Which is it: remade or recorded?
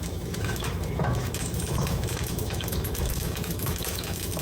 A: remade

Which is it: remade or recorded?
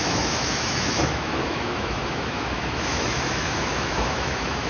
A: remade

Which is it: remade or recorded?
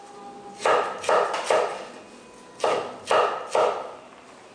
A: recorded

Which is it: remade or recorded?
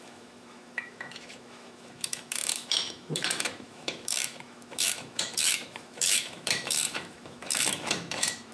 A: remade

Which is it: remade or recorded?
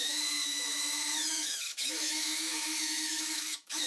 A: remade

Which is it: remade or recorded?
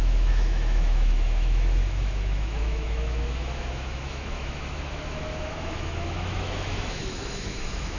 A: remade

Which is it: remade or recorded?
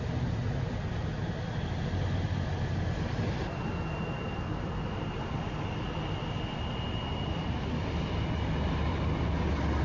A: recorded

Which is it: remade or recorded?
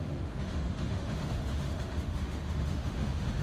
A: remade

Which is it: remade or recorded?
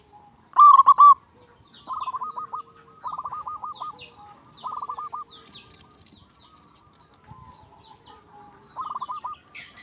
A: recorded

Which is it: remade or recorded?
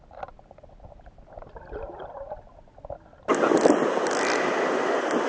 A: recorded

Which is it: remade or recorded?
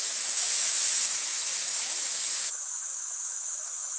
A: remade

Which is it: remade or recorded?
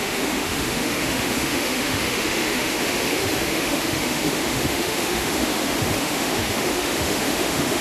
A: remade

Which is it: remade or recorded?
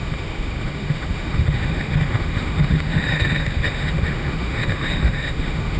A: remade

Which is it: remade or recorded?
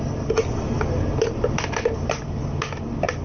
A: recorded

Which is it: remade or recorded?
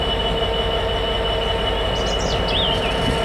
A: recorded